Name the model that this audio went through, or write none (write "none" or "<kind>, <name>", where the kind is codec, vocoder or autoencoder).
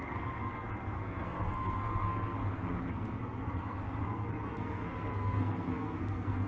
codec, SNAC